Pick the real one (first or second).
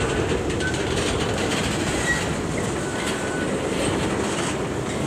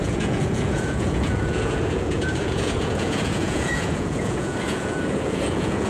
first